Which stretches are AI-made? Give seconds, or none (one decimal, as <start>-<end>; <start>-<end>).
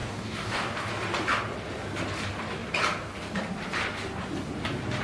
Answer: 0.0-0.9